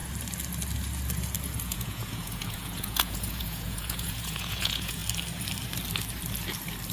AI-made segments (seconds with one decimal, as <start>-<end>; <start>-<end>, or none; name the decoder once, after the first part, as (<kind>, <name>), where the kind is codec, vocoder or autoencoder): 1.6-5.0 (vocoder, Vocos)